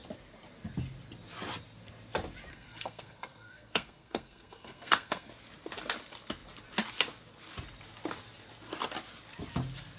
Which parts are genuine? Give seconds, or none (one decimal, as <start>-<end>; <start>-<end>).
0.0-2.5; 5.3-10.0